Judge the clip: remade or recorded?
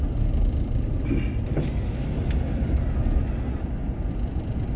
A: recorded